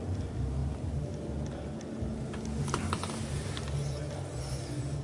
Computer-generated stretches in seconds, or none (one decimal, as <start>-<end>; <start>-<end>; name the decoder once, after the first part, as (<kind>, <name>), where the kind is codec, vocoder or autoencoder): none

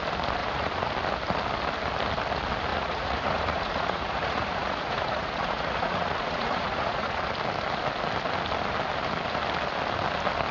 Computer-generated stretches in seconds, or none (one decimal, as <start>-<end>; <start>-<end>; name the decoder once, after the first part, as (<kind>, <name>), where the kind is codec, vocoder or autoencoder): 0.4-0.9 (vocoder, Vocos); 2.7-7.2

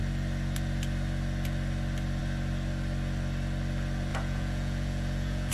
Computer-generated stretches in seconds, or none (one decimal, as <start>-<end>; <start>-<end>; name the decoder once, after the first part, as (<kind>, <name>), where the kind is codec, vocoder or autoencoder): 4.1-5.5 (vocoder, Vocos)